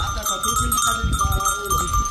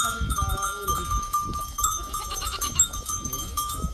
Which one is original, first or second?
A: first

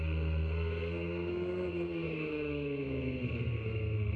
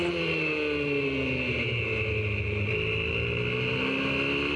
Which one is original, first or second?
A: second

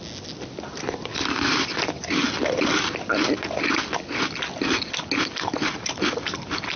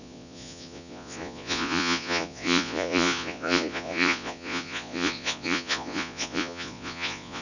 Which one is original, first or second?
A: first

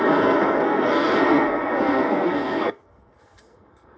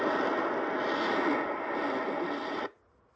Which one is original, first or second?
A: second